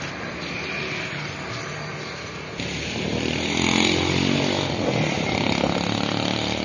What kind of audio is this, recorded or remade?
recorded